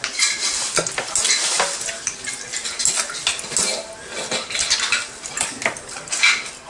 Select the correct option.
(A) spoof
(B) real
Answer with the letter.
B